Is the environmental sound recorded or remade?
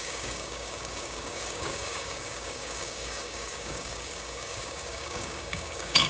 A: remade